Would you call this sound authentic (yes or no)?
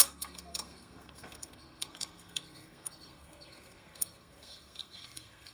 no